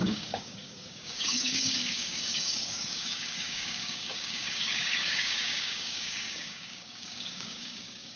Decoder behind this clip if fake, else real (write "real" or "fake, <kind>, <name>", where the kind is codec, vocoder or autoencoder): fake, codec, DAC